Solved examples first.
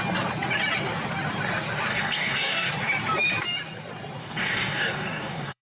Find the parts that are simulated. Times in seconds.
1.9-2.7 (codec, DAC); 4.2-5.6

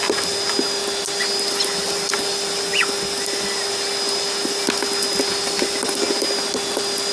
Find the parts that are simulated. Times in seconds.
none

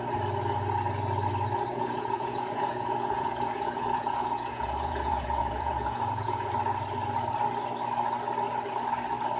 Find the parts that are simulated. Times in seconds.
1.7-6.5 (vocoder, Vocos)

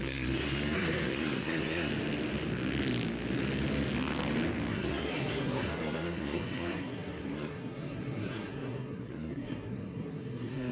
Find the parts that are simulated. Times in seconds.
0.0-1.9 (codec, SNAC); 4.7-10.7

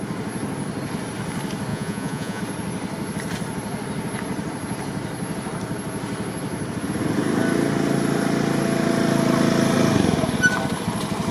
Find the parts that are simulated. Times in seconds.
1.7-2.4 (vocoder, Vocos)

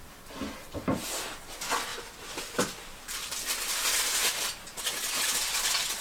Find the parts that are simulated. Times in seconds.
1.9-4.8 (vocoder, BigVGAN v2)